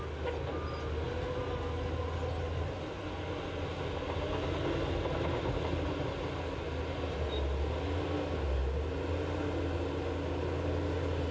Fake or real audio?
real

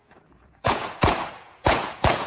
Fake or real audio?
fake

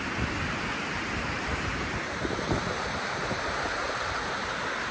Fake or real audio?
fake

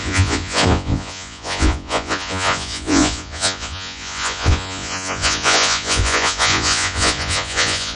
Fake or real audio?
fake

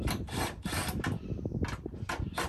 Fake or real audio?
real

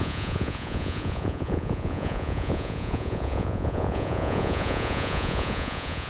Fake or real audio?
fake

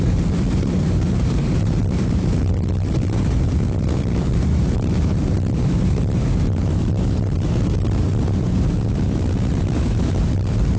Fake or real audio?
fake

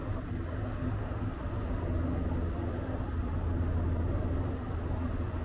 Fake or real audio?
real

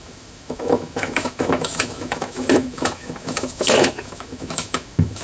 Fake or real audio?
fake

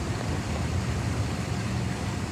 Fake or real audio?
fake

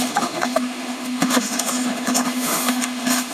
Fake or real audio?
fake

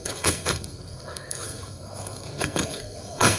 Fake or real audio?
fake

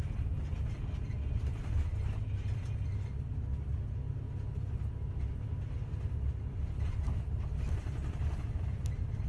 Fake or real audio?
real